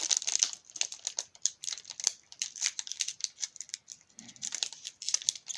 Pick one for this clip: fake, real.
fake